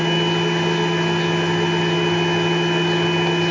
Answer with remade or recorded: recorded